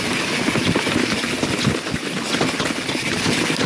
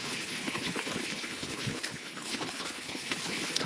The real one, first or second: first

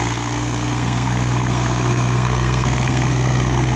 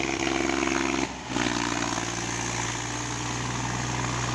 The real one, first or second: second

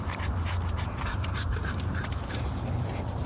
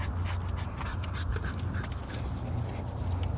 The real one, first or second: second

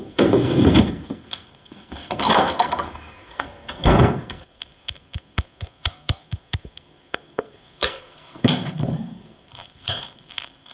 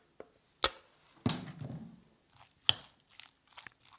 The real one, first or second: second